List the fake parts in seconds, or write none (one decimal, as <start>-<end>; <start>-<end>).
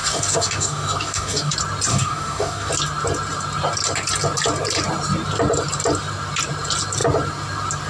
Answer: 0.0-1.5; 1.9-2.7